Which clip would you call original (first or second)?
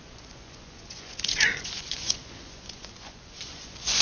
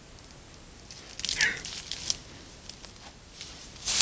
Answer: second